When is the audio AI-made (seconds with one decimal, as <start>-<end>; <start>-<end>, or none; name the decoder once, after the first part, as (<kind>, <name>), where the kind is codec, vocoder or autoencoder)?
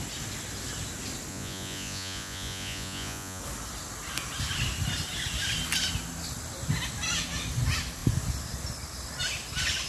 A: 1.3-3.4 (vocoder, Vocos)